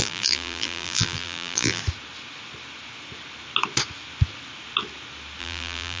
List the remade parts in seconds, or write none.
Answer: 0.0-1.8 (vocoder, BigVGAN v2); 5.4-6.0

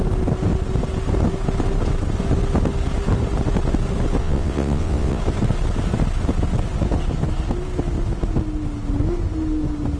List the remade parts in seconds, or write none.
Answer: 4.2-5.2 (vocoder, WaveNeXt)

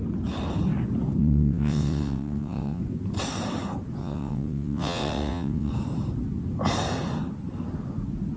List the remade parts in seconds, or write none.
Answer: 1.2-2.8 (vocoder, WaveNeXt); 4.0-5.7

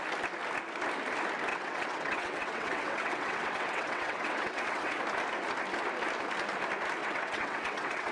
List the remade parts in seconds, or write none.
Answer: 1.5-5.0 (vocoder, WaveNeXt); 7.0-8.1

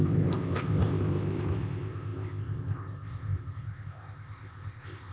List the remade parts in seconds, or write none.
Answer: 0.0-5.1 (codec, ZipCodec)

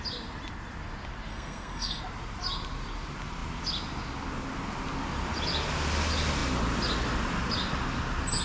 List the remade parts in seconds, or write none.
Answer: 1.3-2.0 (codec, SNAC)

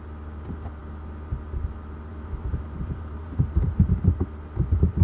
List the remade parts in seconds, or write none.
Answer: 2.1-3.8 (vocoder, BigVGAN v2)

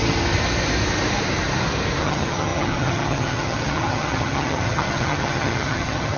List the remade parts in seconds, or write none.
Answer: 2.0-6.2 (vocoder, HiFi-GAN)